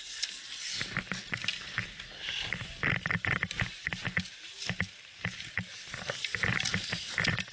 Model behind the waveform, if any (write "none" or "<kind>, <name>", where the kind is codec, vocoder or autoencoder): none